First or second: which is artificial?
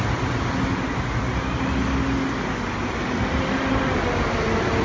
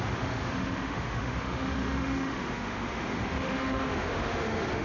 second